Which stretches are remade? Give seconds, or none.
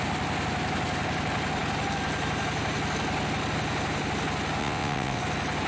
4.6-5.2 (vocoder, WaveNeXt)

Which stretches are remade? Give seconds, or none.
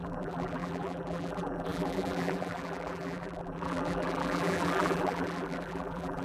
0.0-6.2 (vocoder, BigVGAN v2)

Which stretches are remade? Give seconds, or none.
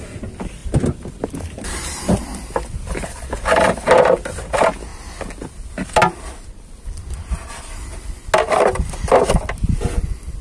none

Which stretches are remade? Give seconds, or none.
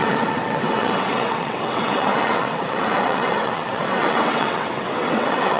0.0-5.6 (vocoder, WaveNeXt)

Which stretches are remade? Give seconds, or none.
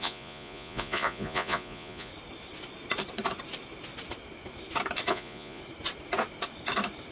0.0-2.1 (vocoder, Vocos); 5.1-5.6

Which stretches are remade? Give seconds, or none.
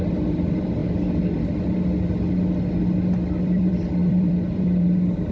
0.0-0.8 (vocoder, BigVGAN v2); 3.4-5.3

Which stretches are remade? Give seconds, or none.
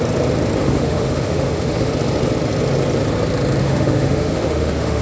0.6-1.9 (autoencoder, DAC-VAE); 3.6-5.0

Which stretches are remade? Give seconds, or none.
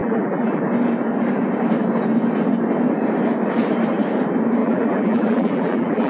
0.0-0.6 (vocoder, BigVGAN v2); 4.6-6.1